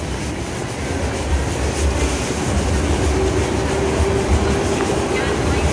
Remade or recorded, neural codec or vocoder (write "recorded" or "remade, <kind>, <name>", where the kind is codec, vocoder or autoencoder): recorded